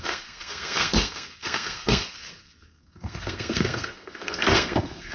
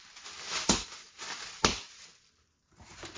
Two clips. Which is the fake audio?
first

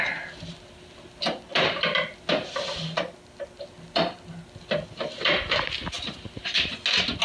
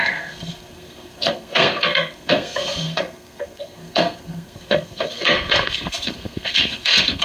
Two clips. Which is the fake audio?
second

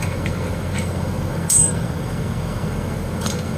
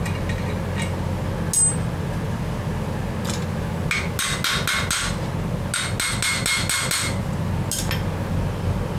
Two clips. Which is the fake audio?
first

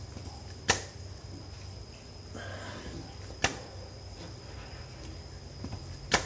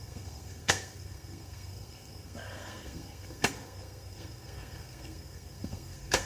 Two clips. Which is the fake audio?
second